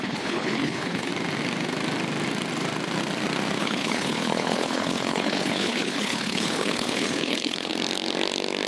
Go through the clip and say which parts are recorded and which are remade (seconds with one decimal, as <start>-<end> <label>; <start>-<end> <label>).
0.0-1.1 remade; 1.1-3.6 recorded; 3.6-7.7 remade; 7.7-8.7 recorded